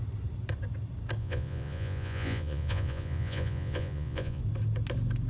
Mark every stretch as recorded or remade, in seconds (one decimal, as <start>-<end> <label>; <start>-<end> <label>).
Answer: 0.0-1.2 recorded; 1.2-4.4 remade; 4.4-5.3 recorded